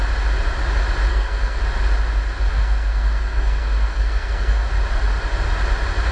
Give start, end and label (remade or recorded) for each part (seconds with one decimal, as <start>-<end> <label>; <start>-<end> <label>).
0.0-1.1 recorded; 1.1-1.6 remade; 1.6-2.5 recorded; 2.5-4.7 remade; 4.7-6.1 recorded